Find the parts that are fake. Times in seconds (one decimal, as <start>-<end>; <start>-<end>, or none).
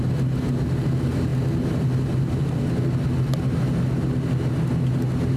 none